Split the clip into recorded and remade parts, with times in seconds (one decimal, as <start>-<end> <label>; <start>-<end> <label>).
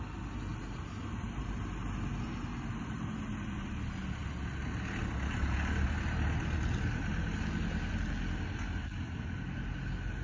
0.0-0.5 recorded; 0.5-1.6 remade; 1.6-10.2 recorded